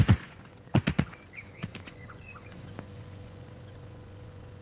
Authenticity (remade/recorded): remade